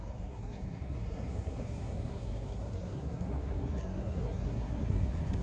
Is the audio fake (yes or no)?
yes